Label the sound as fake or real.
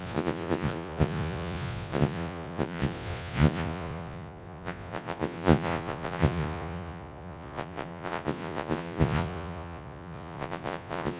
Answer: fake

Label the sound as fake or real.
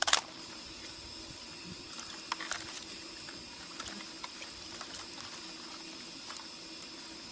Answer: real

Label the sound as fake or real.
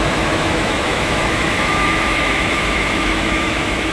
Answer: fake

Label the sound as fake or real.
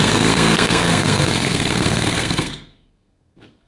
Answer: fake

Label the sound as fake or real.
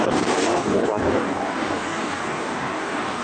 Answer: fake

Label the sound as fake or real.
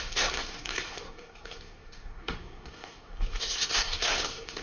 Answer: fake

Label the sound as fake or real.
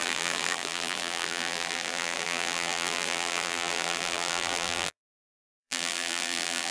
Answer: fake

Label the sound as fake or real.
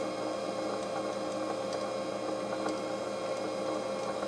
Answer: real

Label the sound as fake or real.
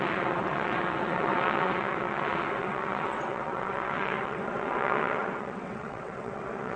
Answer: fake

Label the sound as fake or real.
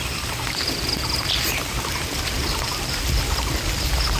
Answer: real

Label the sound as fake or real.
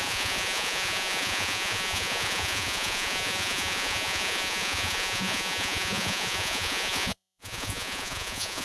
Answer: fake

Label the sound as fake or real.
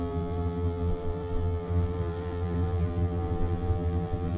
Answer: fake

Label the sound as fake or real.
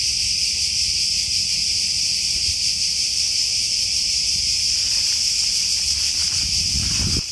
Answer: fake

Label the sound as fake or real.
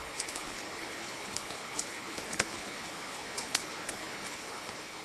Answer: fake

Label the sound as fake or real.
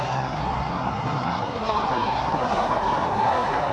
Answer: fake